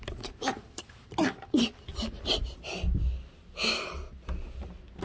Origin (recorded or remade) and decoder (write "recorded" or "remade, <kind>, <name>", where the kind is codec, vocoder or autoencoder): recorded